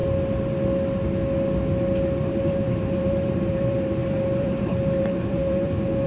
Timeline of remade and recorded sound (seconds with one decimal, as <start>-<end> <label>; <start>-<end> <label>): 0.0-2.4 recorded; 2.4-6.1 remade